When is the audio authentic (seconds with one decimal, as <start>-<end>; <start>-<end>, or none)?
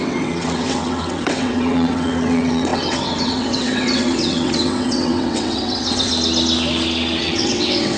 6.1-7.2